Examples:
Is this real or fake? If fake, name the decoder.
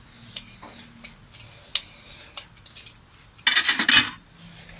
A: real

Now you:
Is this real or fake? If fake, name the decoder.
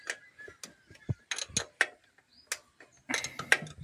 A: real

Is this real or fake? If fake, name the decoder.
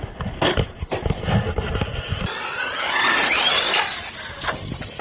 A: real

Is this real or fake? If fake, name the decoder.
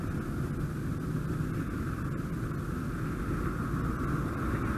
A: real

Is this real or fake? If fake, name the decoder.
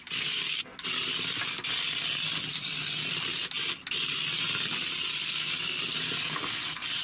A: real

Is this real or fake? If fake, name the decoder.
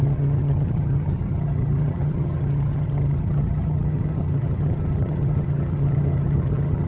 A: fake, vocoder, HiFi-GAN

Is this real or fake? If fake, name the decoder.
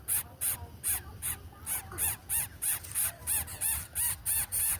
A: real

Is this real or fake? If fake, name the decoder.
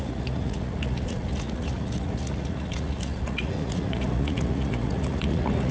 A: fake, vocoder, Vocos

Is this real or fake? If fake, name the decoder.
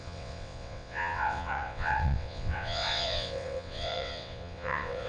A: fake, vocoder, WaveNeXt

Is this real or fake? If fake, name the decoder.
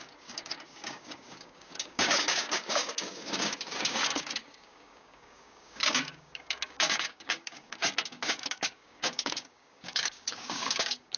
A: fake, codec, DAC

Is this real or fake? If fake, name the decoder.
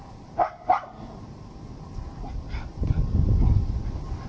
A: real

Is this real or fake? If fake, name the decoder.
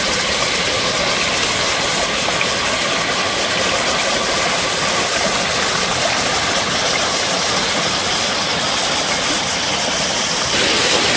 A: real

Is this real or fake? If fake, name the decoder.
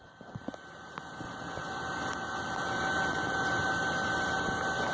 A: real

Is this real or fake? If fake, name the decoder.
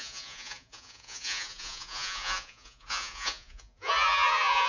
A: fake, vocoder, Vocos